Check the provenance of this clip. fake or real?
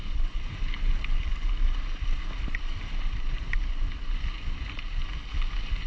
fake